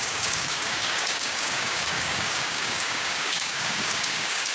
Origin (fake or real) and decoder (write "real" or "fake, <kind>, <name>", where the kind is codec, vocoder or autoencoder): fake, codec, DAC